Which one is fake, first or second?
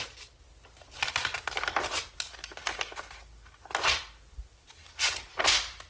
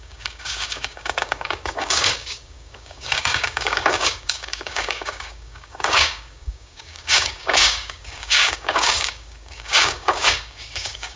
second